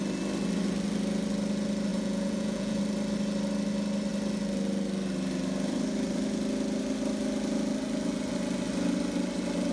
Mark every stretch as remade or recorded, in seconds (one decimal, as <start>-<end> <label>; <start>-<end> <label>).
0.0-1.9 recorded; 1.9-2.8 remade; 2.8-9.7 recorded